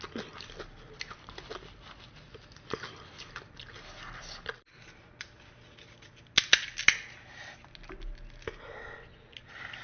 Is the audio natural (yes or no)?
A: yes